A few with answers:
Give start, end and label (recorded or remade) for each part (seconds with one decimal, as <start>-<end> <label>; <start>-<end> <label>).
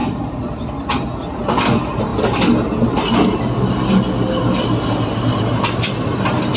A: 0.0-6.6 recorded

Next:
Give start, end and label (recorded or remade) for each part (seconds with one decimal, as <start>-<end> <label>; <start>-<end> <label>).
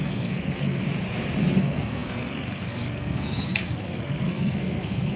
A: 0.0-0.8 remade; 0.8-1.6 recorded; 1.6-5.2 remade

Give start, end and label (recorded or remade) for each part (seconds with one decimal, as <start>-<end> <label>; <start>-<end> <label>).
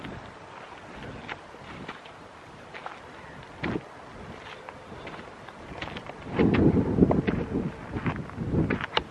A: 0.0-9.1 recorded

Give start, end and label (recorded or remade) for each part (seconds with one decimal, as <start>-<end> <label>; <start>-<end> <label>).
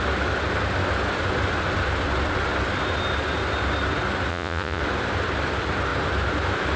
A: 0.0-4.3 recorded; 4.3-4.8 remade; 4.8-6.8 recorded